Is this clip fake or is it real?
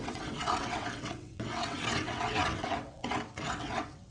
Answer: fake